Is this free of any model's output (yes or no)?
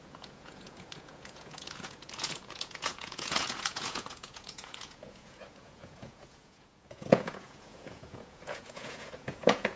no